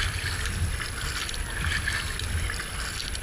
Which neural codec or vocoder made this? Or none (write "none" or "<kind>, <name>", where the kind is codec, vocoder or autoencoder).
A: none